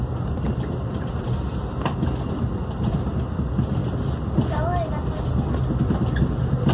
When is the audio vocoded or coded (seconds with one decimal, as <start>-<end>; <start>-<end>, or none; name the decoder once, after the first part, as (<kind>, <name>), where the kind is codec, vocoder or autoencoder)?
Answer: none